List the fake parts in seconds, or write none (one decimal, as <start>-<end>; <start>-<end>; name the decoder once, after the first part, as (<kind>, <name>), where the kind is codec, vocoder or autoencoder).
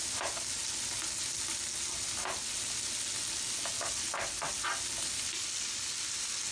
none